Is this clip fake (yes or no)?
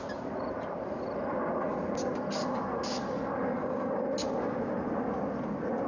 no